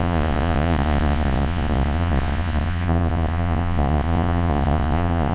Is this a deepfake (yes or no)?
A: yes